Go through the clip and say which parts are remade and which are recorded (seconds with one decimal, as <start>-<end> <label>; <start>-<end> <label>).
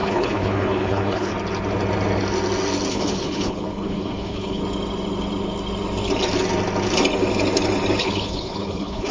0.0-1.3 remade; 1.3-2.9 recorded; 2.9-4.6 remade; 4.6-8.0 recorded; 8.0-9.1 remade